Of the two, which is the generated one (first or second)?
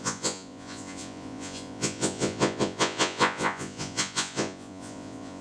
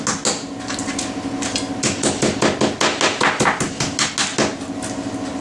first